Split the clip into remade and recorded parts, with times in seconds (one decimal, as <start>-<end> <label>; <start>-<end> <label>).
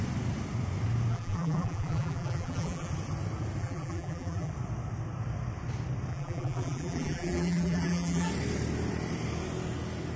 0.0-1.1 recorded; 1.1-2.9 remade; 2.9-3.6 recorded; 3.6-4.5 remade; 4.5-6.1 recorded; 6.1-8.3 remade; 8.3-10.2 recorded